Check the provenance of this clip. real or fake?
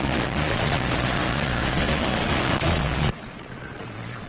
fake